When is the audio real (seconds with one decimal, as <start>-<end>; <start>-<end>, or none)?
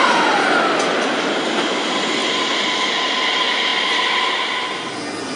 0.0-5.4